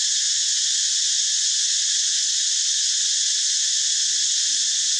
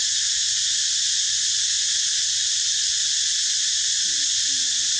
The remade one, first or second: first